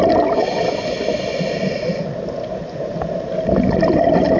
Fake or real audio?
real